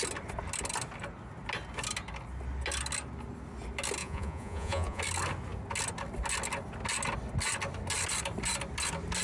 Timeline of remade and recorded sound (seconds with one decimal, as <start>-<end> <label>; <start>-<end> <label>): 0.0-4.0 recorded; 4.0-5.0 remade; 5.0-9.2 recorded